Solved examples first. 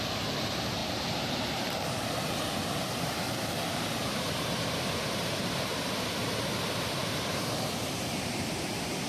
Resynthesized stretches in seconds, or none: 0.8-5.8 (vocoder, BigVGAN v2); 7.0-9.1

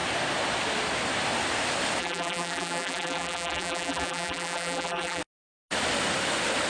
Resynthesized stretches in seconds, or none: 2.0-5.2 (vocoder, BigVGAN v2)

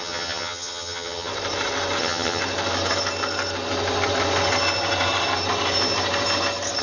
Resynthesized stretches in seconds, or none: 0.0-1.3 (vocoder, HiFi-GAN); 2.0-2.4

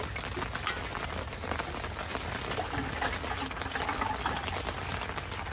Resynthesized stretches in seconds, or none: none

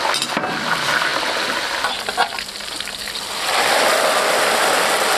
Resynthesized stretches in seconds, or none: none

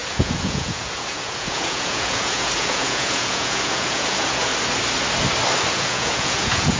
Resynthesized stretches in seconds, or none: 0.0-4.5 (vocoder, Vocos); 5.7-6.8

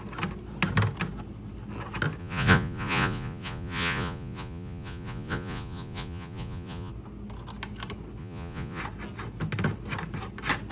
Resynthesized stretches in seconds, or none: 2.2-6.9 (vocoder, Vocos); 8.2-8.8

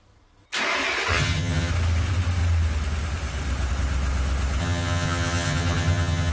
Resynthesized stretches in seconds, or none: 1.1-1.7 (vocoder, HiFi-GAN); 4.6-6.3